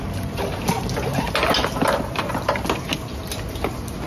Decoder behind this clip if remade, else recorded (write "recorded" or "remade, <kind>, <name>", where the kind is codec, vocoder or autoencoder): recorded